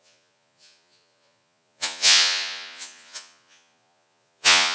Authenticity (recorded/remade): remade